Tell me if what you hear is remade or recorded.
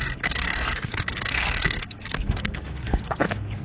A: remade